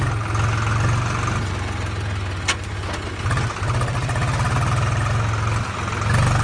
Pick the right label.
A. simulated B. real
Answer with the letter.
B